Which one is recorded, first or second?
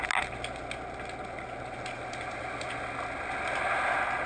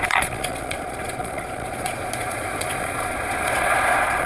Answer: first